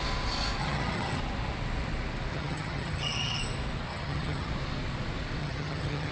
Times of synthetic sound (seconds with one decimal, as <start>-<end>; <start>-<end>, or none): 0.6-1.2; 2.3-3.4; 3.9-4.5; 5.4-6.1